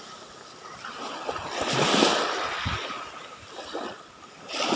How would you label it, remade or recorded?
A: recorded